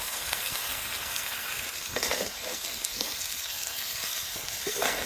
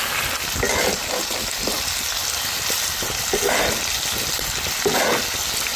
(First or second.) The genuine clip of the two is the second